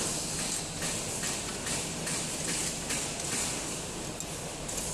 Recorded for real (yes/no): yes